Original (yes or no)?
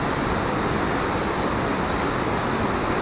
yes